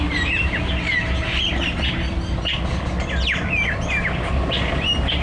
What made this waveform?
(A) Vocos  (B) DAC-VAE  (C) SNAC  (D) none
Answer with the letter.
D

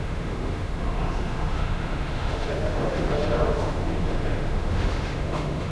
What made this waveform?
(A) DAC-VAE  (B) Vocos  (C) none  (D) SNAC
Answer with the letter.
A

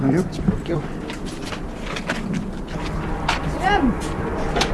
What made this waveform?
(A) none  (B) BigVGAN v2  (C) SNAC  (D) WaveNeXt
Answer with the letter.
A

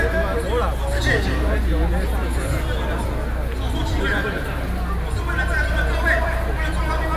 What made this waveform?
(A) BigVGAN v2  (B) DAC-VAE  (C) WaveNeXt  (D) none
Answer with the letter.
D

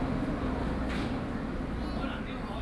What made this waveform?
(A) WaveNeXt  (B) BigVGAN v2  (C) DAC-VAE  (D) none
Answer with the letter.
D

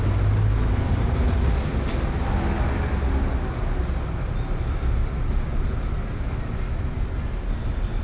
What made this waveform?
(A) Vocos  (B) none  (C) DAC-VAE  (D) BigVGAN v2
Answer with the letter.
B